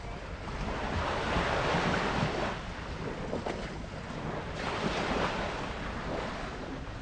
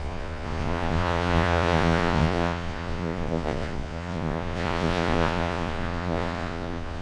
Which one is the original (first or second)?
first